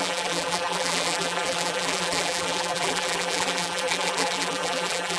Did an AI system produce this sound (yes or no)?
yes